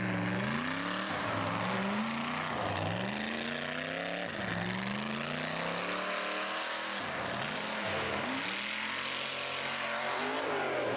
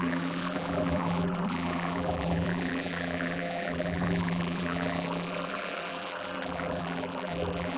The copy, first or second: second